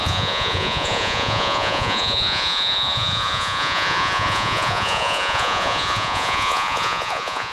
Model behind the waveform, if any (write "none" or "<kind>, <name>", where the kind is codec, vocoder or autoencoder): vocoder, Vocos